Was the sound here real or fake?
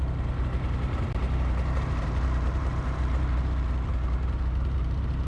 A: fake